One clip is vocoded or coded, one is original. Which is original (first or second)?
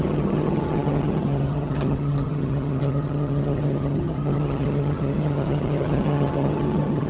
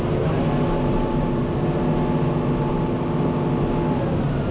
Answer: second